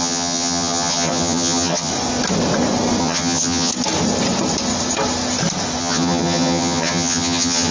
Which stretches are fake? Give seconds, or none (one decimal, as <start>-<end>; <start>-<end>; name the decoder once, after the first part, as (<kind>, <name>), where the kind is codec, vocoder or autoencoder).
0.0-1.9 (vocoder, HiFi-GAN); 3.0-3.7; 5.8-7.7